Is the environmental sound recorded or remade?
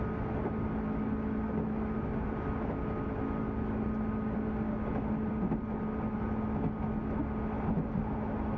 recorded